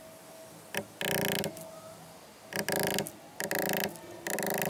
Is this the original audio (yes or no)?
yes